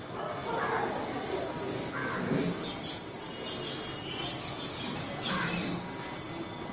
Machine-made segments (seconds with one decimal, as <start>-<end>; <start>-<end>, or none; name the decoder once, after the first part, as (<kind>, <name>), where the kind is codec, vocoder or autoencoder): none